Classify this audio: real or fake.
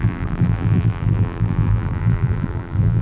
fake